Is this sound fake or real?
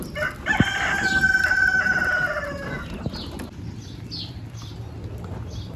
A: real